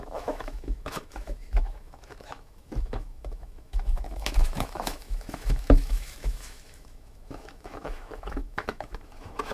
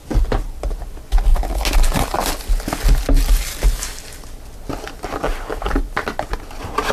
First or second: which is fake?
first